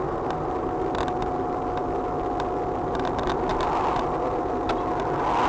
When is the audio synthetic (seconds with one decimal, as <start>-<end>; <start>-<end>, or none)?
none